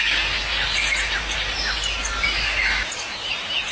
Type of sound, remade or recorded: recorded